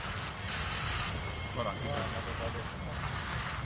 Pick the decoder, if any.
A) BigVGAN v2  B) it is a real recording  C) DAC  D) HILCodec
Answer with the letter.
B